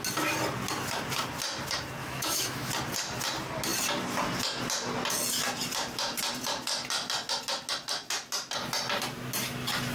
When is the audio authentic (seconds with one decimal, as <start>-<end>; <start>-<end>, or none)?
0.0-2.0; 2.7-9.9